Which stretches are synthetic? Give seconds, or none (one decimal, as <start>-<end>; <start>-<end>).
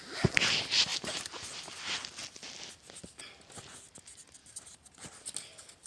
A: 0.9-1.6; 4.4-5.1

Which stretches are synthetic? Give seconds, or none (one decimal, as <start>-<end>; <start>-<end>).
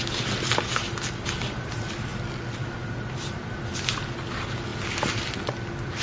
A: none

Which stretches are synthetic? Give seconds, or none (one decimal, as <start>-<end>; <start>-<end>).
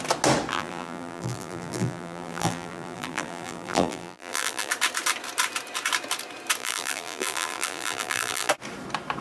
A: 0.5-4.7; 6.6-8.5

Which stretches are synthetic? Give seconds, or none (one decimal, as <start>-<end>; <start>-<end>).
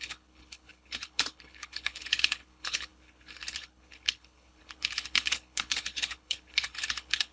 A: 0.0-7.3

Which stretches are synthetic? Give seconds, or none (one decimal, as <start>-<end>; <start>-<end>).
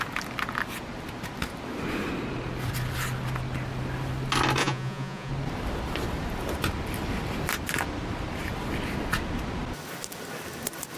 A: 4.6-5.3